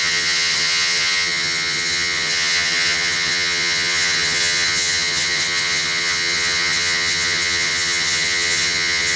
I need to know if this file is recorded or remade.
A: remade